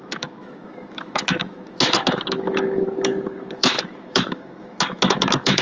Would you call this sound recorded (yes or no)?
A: no